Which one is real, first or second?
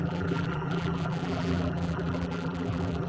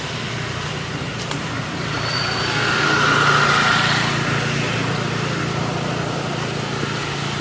second